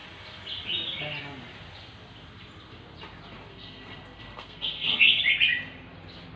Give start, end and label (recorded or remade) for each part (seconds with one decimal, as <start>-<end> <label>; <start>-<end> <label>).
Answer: 0.0-3.5 recorded; 3.5-5.2 remade; 5.2-6.4 recorded